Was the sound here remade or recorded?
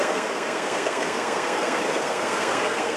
remade